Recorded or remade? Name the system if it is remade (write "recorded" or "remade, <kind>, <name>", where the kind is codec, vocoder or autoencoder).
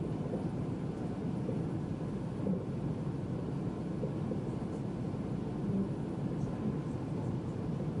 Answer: remade, vocoder, BigVGAN v2